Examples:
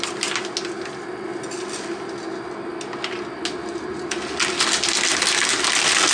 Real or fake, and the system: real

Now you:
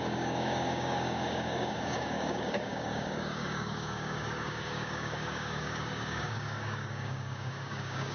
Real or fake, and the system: fake, codec, DAC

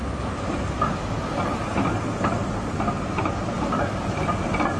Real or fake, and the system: real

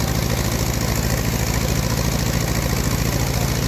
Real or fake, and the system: real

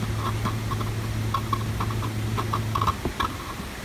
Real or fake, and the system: real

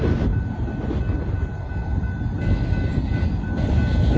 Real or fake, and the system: real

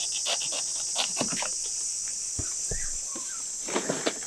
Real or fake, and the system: real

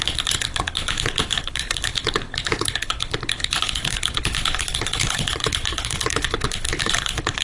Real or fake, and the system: fake, codec, HILCodec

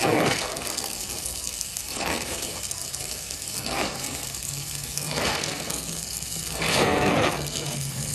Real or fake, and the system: fake, codec, SNAC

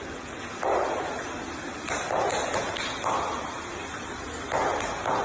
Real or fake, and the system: real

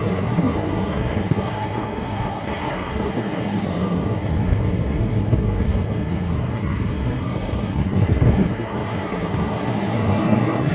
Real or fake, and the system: fake, codec, SNAC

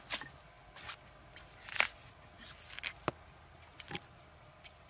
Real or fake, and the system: real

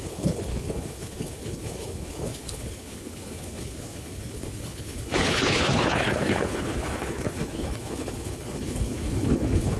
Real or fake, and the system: fake, codec, HILCodec